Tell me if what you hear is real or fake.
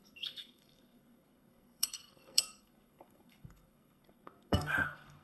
fake